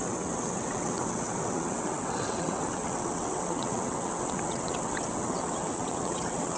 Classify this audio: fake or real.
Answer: fake